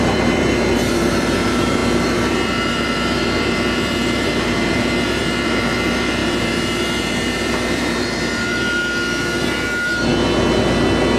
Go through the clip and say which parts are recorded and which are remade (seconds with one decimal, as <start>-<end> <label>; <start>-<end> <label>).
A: 0.0-10.1 remade; 10.1-11.2 recorded